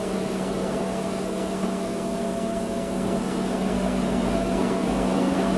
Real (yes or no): no